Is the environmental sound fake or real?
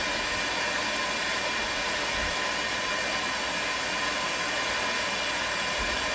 real